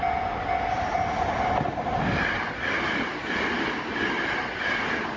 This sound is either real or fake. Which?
real